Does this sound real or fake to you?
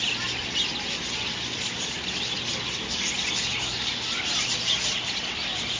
real